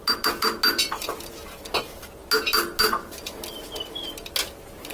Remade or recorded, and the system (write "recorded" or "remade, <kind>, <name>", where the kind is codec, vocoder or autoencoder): recorded